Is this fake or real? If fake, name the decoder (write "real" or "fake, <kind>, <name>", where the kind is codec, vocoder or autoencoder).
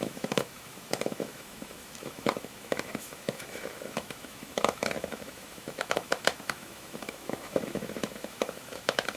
fake, autoencoder, DAC-VAE